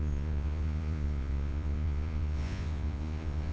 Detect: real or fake fake